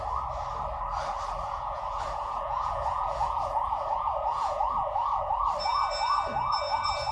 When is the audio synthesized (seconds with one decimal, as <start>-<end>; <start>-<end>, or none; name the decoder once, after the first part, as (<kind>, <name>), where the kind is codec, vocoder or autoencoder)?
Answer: 1.5-5.3 (vocoder, Vocos)